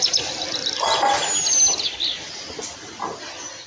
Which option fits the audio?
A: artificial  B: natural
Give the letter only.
B